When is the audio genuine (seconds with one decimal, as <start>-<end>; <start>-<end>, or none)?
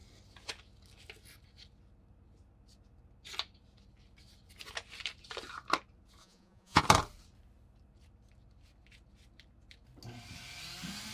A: 0.0-6.2; 6.8-11.1